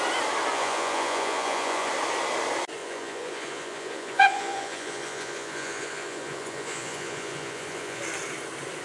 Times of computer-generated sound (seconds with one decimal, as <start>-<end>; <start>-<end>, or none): 0.5-1.9; 2.8-8.0